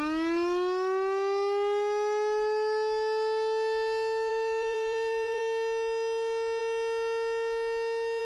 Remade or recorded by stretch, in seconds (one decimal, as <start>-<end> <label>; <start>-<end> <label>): 0.0-4.3 recorded; 4.3-5.4 remade; 5.4-8.2 recorded